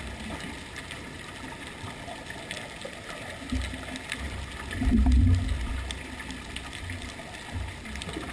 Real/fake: real